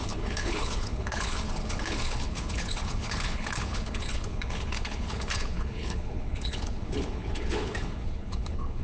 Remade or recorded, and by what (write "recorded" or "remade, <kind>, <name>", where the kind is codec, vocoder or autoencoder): remade, codec, HILCodec